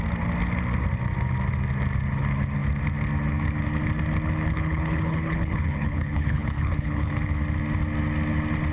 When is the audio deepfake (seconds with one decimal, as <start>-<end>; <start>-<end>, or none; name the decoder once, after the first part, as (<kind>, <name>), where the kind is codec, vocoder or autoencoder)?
4.5-7.1 (codec, HILCodec)